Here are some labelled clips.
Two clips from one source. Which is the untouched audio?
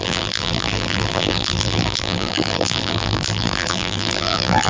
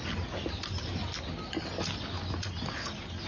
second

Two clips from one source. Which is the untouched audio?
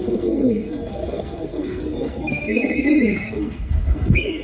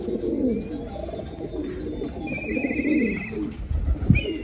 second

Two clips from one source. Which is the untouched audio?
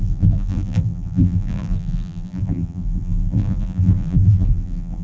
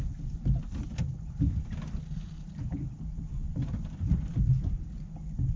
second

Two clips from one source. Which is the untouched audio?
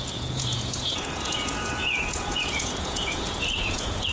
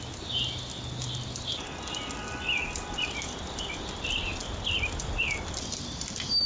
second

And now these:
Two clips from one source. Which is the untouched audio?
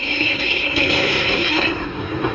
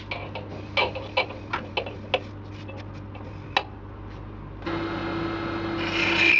second